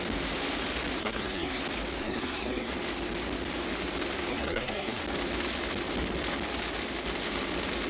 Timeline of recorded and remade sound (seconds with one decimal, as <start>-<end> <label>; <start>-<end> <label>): 0.0-1.0 recorded; 1.0-1.6 remade; 1.6-2.0 recorded; 2.0-2.7 remade; 2.7-4.3 recorded; 4.3-5.0 remade; 5.0-7.9 recorded